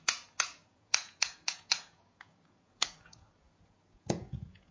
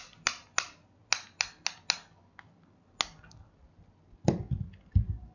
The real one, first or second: second